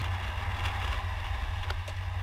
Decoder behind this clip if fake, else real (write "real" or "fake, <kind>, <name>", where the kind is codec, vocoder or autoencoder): real